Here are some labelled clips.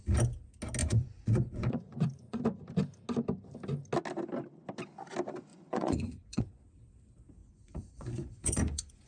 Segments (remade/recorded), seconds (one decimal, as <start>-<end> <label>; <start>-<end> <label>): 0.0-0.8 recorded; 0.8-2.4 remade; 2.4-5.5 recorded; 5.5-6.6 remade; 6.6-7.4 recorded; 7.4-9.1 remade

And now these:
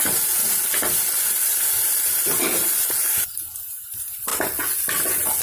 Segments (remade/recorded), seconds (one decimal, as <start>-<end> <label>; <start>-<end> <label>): 0.0-0.4 remade; 0.4-3.6 recorded; 3.6-4.3 remade; 4.3-5.4 recorded

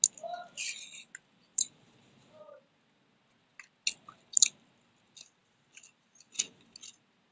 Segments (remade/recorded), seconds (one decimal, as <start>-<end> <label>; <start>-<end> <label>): 0.0-1.5 recorded; 1.5-2.4 remade; 2.4-7.3 recorded

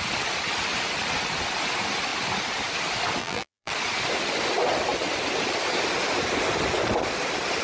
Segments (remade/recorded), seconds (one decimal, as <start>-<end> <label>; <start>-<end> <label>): 0.0-3.2 recorded; 3.2-3.7 remade; 3.7-7.6 recorded

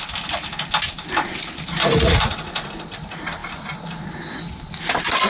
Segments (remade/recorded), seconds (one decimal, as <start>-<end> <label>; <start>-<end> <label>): 0.0-1.8 recorded; 1.8-2.5 remade; 2.5-5.3 recorded

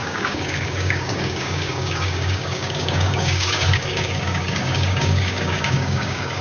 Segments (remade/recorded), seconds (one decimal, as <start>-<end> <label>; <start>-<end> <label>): 0.0-6.4 remade

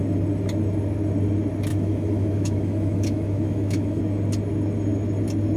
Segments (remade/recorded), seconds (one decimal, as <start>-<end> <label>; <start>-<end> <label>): 0.0-1.7 recorded; 1.7-4.0 remade; 4.0-5.6 recorded